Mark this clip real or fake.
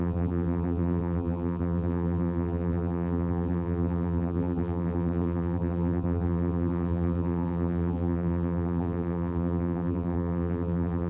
fake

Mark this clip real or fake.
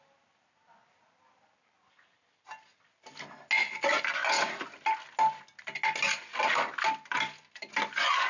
real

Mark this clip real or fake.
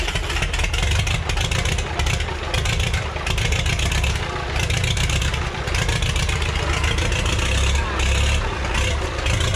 real